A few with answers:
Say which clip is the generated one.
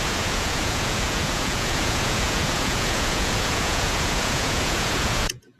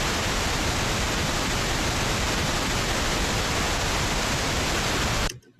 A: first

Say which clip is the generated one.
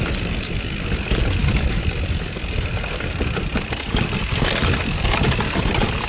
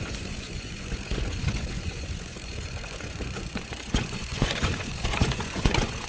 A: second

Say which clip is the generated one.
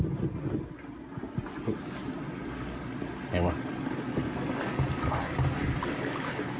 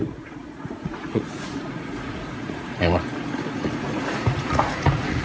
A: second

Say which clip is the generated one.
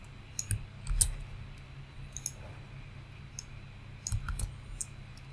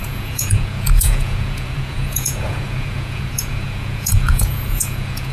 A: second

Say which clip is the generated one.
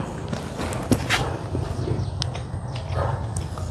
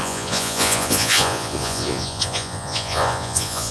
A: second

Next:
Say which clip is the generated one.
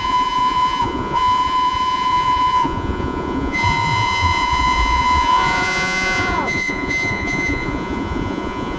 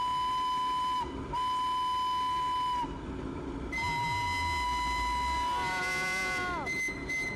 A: first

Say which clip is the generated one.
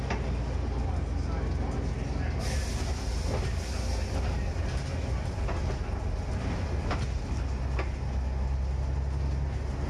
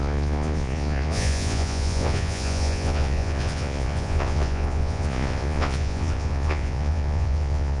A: second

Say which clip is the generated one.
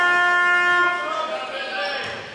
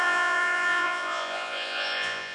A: second